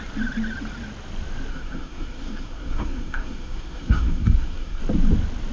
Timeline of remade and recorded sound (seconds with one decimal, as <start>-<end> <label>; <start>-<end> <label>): 0.0-1.5 recorded; 1.5-4.8 remade; 4.8-5.5 recorded